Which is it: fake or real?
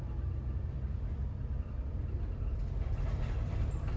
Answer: fake